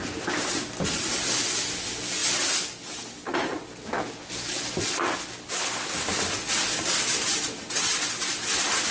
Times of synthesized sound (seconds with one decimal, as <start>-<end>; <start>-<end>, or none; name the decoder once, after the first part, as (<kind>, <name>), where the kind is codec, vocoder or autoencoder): none